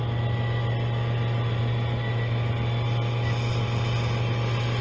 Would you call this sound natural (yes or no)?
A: yes